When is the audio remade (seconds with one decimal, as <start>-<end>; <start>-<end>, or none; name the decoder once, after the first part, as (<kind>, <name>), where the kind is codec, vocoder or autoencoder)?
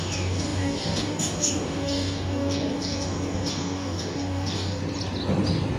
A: 0.0-4.8 (codec, DAC)